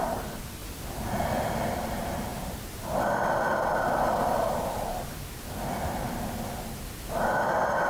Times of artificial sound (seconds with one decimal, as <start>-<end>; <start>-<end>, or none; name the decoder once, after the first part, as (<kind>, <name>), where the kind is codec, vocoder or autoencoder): none